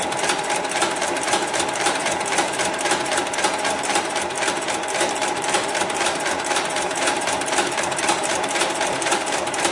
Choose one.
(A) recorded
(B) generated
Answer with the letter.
B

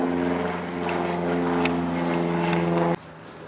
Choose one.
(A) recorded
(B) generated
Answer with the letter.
A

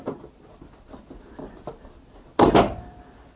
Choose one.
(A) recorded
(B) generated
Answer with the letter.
A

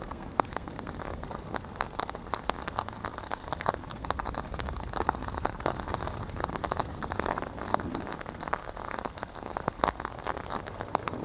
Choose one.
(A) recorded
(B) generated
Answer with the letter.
B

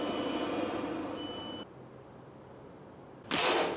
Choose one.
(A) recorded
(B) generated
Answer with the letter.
A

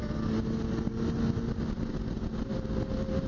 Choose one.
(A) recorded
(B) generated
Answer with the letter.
A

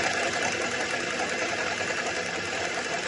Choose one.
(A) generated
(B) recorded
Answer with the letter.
B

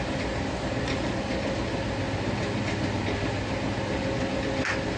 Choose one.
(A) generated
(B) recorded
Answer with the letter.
B